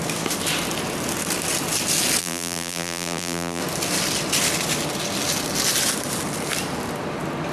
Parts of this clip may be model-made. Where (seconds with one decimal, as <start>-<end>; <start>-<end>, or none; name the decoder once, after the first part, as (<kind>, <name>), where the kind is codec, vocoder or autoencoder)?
2.2-3.6 (vocoder, BigVGAN v2)